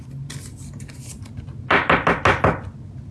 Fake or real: real